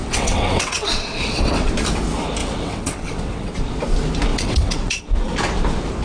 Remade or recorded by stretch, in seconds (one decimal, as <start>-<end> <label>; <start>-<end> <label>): 0.0-1.7 remade; 1.7-2.4 recorded; 2.4-3.5 remade; 3.5-4.3 recorded; 4.3-5.0 remade; 5.0-6.0 recorded

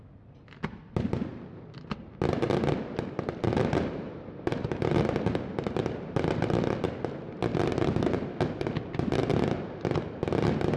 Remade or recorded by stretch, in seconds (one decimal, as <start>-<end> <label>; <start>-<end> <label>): 0.0-10.8 recorded

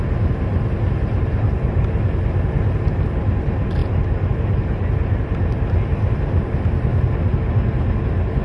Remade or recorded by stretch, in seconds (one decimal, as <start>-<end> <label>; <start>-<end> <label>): 0.0-8.4 recorded

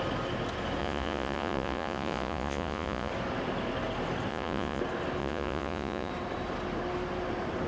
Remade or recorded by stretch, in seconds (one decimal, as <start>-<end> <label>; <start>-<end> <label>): 0.0-0.8 recorded; 0.8-3.1 remade; 3.1-4.3 recorded; 4.3-4.8 remade; 4.8-5.2 recorded; 5.2-6.1 remade; 6.1-7.7 recorded